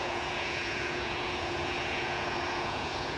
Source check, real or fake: fake